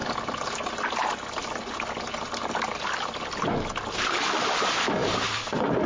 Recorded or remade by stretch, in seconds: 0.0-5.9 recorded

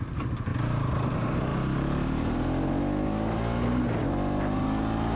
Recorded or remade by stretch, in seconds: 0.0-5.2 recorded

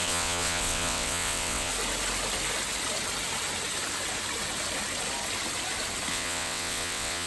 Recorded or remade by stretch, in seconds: 0.0-1.7 remade; 1.7-6.1 recorded; 6.1-7.3 remade

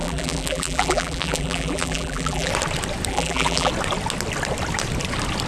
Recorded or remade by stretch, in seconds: 0.0-2.5 remade; 2.5-3.1 recorded; 3.1-3.7 remade; 3.7-5.5 recorded

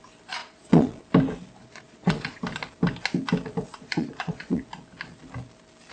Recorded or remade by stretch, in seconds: 0.0-0.4 recorded; 0.4-1.0 remade; 1.0-1.6 recorded; 1.6-2.4 remade; 2.4-3.7 recorded; 3.7-4.6 remade; 4.6-5.9 recorded

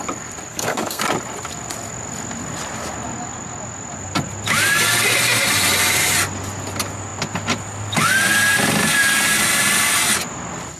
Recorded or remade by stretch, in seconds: 0.0-0.5 recorded; 0.5-1.0 remade; 1.0-10.8 recorded